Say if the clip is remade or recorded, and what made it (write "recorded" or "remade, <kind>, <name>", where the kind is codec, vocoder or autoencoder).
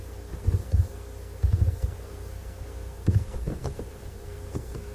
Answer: remade, codec, SNAC